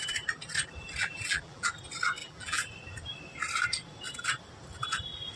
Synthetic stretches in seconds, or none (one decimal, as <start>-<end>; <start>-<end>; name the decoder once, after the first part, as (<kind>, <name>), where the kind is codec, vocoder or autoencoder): 1.0-1.7 (vocoder, BigVGAN v2); 2.2-2.7